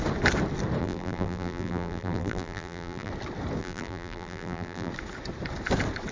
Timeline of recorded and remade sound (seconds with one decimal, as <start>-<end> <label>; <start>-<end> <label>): 0.0-0.8 recorded; 0.8-3.1 remade; 3.1-3.6 recorded; 3.6-4.9 remade; 4.9-6.1 recorded